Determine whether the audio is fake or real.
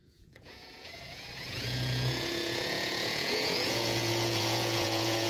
fake